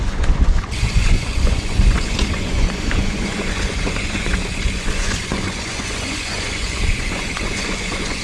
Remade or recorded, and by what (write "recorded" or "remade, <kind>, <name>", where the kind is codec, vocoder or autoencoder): remade, vocoder, Vocos